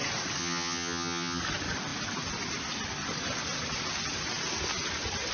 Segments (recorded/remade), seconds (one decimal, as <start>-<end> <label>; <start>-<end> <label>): 0.0-0.4 recorded; 0.4-1.4 remade; 1.4-5.3 recorded